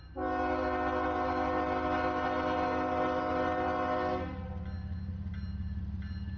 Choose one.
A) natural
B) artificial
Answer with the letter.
A